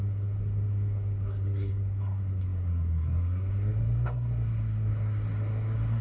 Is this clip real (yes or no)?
no